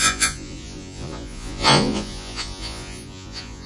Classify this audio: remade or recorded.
remade